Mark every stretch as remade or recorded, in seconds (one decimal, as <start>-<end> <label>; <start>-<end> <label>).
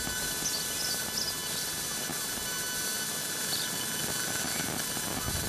0.0-5.5 recorded